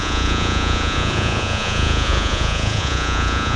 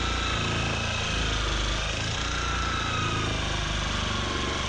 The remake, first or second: first